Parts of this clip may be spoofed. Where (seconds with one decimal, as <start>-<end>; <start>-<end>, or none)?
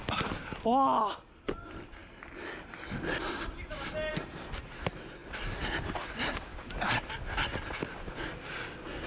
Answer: none